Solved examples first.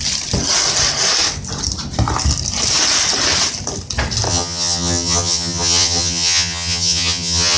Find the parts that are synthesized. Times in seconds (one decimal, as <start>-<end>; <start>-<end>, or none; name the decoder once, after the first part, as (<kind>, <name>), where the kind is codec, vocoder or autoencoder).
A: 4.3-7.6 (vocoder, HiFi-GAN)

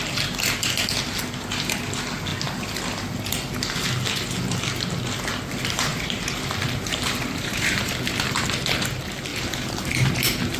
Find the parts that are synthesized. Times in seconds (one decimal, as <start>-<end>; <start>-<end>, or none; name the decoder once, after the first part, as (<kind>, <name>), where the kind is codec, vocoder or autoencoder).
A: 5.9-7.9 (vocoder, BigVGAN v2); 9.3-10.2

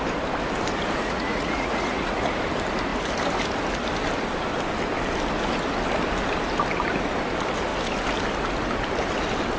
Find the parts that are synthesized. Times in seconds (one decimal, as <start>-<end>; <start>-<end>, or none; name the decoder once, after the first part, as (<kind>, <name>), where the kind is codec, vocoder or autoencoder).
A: 1.0-2.3 (vocoder, Vocos)

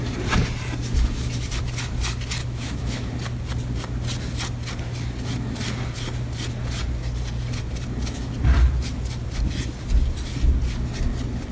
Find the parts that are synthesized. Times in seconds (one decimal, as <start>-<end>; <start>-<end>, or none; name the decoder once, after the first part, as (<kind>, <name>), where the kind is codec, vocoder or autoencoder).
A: 2.4-3.1 (autoencoder, DAC-VAE)